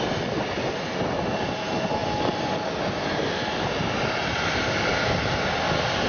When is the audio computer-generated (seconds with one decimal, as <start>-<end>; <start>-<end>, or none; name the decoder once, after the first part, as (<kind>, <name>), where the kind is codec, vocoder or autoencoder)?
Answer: none